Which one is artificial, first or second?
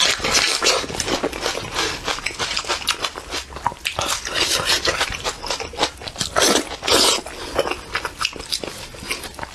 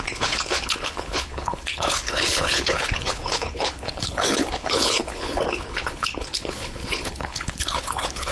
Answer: second